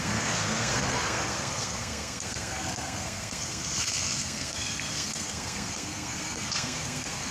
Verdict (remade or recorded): remade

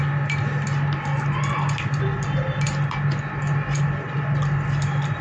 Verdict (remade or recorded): recorded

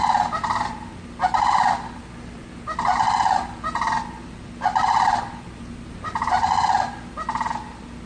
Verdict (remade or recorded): recorded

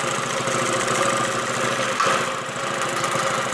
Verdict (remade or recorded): recorded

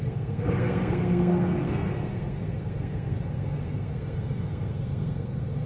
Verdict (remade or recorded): remade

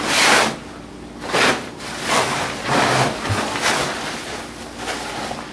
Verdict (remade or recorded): recorded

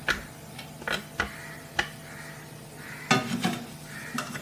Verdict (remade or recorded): recorded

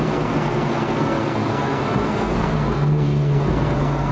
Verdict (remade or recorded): remade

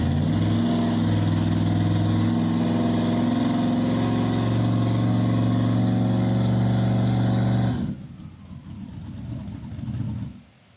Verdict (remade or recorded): recorded